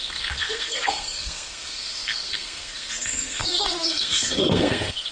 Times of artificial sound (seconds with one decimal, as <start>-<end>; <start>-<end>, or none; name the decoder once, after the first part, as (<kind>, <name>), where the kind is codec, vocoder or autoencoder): 0.0-5.1 (codec, SNAC)